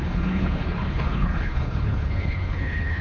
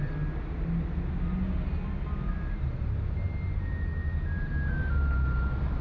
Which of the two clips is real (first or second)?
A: second